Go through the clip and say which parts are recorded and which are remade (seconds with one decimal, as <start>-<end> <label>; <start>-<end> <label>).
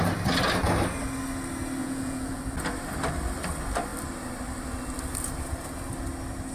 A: 0.0-1.8 recorded; 1.8-2.4 remade; 2.4-6.5 recorded